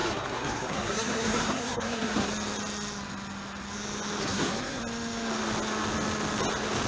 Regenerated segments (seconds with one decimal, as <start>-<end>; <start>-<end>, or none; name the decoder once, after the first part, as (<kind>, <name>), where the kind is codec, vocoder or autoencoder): 0.0-2.3 (codec, SNAC); 4.2-4.8